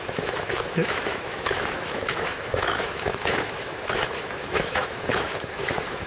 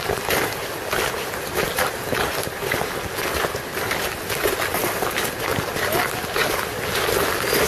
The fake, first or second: first